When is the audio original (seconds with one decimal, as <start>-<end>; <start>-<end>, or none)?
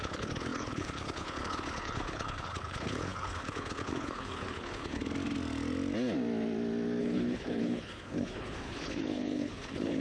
5.0-7.0